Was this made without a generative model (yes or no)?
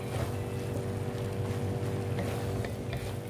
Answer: yes